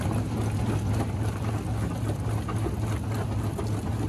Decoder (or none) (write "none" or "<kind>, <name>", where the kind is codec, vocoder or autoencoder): none